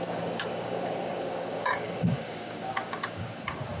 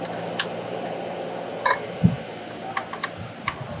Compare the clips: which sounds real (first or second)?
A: second